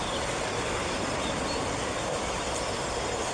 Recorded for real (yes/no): yes